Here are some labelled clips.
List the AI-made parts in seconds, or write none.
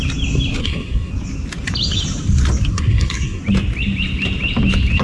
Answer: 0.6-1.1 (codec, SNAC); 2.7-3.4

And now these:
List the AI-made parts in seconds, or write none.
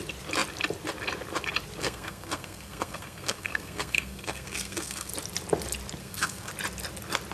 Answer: 1.8-5.1 (codec, SNAC); 6.0-6.5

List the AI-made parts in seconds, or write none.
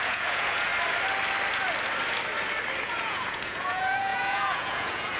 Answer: 0.0-0.7 (vocoder, Vocos); 2.8-5.2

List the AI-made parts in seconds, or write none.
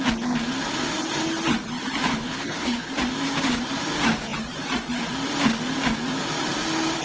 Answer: 2.1-2.9 (codec, HILCodec)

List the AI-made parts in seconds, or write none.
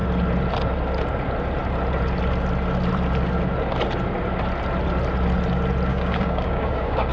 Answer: 5.9-7.1 (codec, DAC)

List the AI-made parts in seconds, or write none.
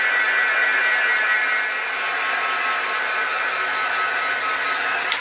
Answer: none